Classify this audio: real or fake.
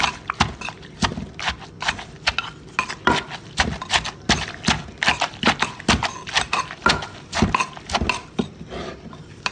real